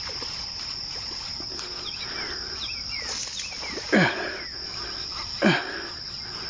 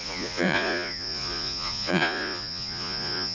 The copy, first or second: second